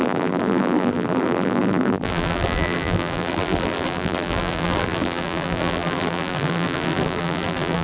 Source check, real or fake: fake